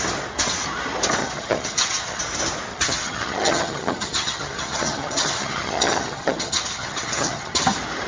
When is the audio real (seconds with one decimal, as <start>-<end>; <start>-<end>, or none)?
0.0-1.2; 2.2-2.7; 7.6-8.1